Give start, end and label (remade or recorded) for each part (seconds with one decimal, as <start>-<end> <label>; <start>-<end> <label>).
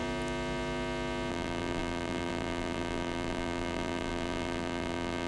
0.0-1.3 recorded; 1.3-5.3 remade